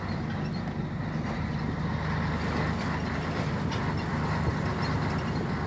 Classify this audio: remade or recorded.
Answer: recorded